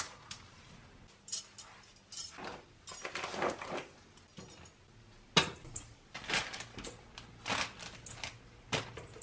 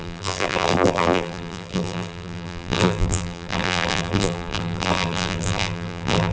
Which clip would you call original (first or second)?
first